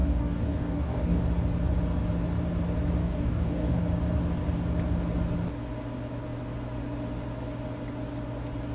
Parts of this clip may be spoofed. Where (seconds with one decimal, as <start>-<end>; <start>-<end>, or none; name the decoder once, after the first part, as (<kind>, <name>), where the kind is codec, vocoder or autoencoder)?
0.0-1.2 (codec, DAC); 3.0-3.8